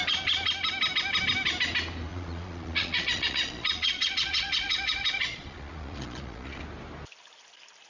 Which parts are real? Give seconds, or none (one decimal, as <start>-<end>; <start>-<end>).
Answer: 0.0-2.1; 6.6-7.9